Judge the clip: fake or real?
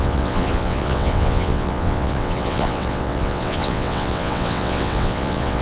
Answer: fake